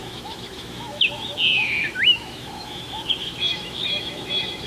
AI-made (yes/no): yes